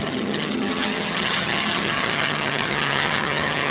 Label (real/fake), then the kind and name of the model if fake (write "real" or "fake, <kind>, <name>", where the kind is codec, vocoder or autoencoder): fake, vocoder, HiFi-GAN